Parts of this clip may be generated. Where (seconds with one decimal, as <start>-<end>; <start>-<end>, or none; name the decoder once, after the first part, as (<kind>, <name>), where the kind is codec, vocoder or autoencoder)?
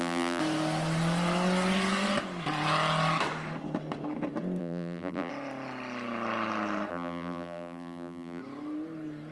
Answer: 0.0-0.4 (vocoder, BigVGAN v2); 4.6-5.3; 6.9-8.4